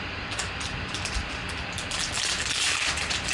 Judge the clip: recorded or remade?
recorded